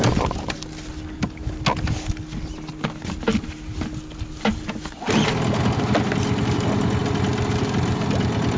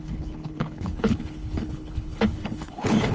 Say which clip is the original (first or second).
first